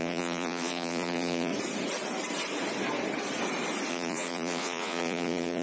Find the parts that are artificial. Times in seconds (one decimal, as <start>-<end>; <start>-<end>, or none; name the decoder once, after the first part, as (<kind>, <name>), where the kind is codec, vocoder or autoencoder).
0.0-1.5 (vocoder, Vocos); 3.9-5.6